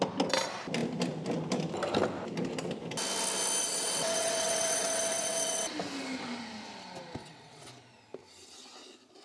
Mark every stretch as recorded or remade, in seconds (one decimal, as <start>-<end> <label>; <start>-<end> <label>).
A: 0.0-3.6 recorded; 3.6-5.7 remade; 5.7-7.2 recorded; 7.2-7.7 remade; 7.7-9.2 recorded